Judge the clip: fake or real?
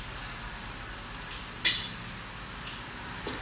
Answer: real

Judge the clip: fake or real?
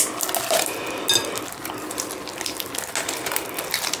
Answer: real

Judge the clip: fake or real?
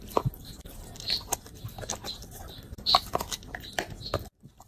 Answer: fake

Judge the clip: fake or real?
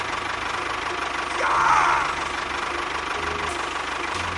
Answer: real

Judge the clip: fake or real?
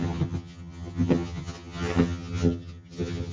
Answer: fake